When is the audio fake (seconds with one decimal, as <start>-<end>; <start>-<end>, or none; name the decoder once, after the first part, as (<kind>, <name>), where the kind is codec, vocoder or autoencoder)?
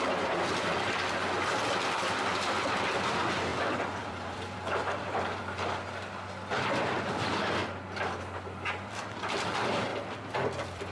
3.5-5.4 (vocoder, BigVGAN v2); 9.9-10.9